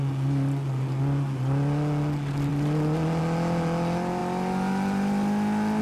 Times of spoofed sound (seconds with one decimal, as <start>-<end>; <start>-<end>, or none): none